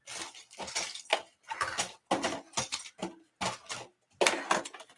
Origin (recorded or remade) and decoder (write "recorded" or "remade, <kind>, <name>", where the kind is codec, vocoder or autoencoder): recorded